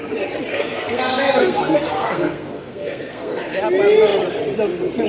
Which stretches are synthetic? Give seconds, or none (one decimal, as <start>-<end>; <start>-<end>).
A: 0.5-3.6